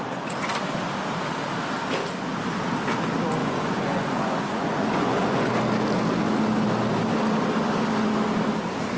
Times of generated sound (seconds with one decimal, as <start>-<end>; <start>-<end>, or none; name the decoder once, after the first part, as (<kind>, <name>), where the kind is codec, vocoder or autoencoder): 3.4-5.5 (vocoder, Vocos)